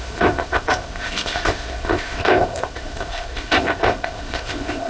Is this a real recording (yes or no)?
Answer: no